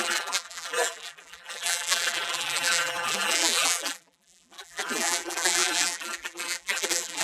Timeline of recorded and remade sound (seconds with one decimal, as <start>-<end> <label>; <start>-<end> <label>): 0.0-7.2 remade